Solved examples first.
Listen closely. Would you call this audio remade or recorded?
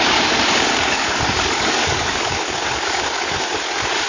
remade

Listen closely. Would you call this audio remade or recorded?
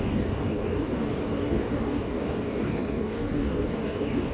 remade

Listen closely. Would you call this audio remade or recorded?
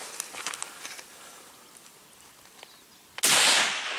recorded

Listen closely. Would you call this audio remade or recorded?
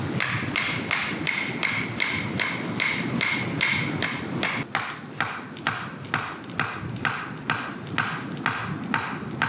recorded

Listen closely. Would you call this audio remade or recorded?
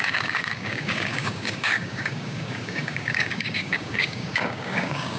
remade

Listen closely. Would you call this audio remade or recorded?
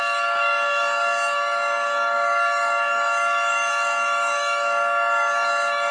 remade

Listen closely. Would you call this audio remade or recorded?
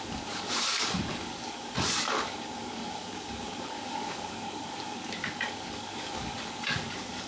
remade